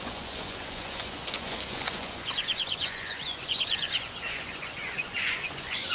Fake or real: fake